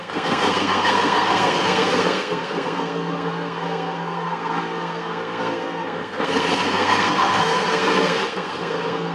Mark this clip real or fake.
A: fake